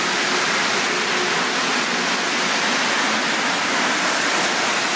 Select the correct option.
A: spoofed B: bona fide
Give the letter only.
B